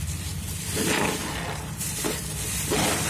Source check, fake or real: fake